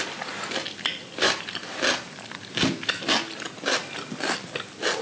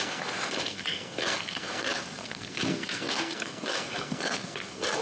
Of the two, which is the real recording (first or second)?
first